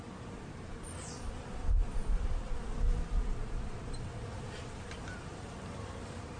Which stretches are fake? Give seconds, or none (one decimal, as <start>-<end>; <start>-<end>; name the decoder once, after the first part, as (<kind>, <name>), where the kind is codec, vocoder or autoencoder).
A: none

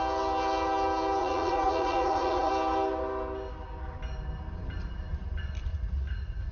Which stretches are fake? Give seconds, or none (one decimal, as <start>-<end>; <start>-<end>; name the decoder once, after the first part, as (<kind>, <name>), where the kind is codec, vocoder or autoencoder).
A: 1.2-2.5 (vocoder, Vocos); 5.7-6.5